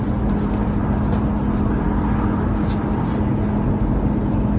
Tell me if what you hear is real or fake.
real